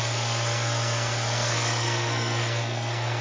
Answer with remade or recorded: remade